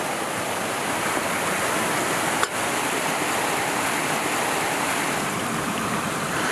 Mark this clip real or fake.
fake